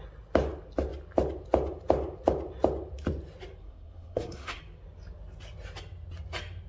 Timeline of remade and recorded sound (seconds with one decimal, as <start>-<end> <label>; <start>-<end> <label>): 0.0-3.6 recorded; 3.6-4.6 remade; 4.6-6.7 recorded